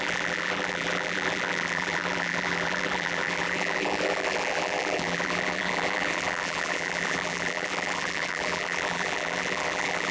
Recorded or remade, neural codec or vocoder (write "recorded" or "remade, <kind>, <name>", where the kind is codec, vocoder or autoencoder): remade, vocoder, BigVGAN v2